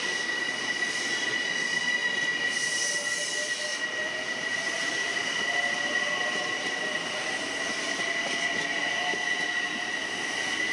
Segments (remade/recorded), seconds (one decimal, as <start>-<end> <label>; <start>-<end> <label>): 0.0-2.0 recorded; 2.0-2.8 remade; 2.8-3.7 recorded; 3.7-8.0 remade; 8.0-10.7 recorded